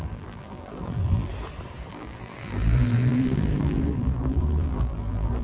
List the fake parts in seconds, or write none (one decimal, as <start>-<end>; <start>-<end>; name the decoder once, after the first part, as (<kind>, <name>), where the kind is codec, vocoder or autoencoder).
0.0-1.3 (vocoder, BigVGAN v2); 1.9-5.4